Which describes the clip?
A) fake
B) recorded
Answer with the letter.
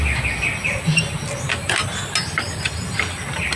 B